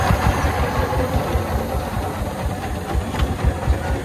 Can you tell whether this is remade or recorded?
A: recorded